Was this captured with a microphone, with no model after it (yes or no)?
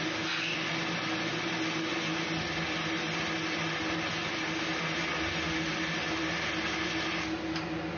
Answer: yes